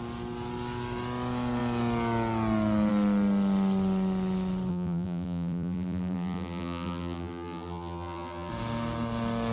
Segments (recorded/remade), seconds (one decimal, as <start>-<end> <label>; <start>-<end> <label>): 0.0-4.7 recorded; 4.7-8.5 remade; 8.5-9.5 recorded